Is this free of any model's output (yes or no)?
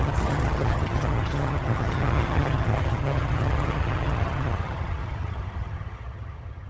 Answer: no